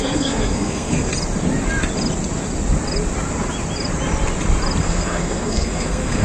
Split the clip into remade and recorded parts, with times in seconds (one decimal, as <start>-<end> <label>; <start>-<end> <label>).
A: 0.0-1.1 remade; 1.1-4.8 recorded; 4.8-6.2 remade